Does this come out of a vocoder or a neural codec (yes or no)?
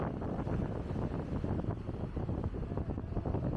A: no